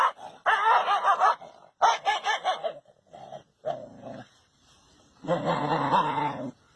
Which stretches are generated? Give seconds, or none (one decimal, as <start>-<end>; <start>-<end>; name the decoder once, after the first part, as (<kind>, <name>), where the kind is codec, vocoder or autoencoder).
0.8-1.3 (vocoder, BigVGAN v2)